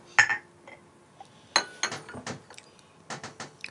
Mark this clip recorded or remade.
recorded